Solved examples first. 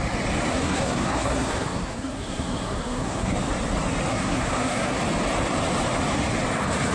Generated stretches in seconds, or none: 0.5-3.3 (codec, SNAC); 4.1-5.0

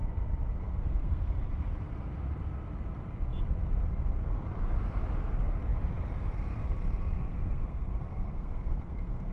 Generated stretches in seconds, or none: 0.6-1.4 (codec, SNAC); 7.3-9.3

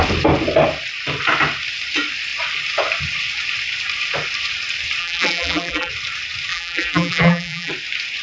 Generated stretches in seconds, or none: 5.0-5.9 (vocoder, BigVGAN v2); 6.5-7.7

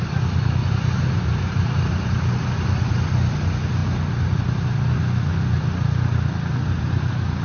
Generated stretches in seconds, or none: 0.6-1.8 (vocoder, BigVGAN v2)

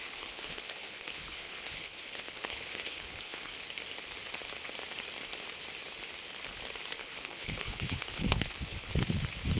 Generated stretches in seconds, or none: 0.0-3.5 (codec, HILCodec); 7.0-8.9

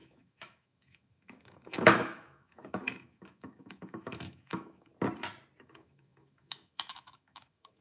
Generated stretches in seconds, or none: 0.0-4.9 (autoencoder, DAC-VAE); 5.6-7.8

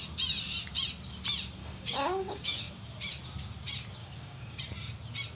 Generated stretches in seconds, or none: 1.6-2.7 (codec, DAC); 4.0-4.6

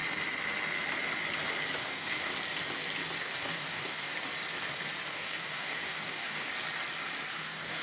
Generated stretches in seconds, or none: 1.8-2.3 (codec, DAC); 3.2-4.1; 5.1-6.5; 7.3-7.8